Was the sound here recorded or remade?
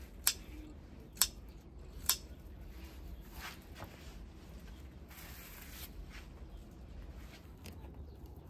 recorded